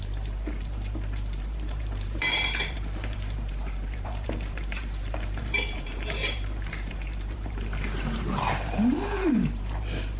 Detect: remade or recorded remade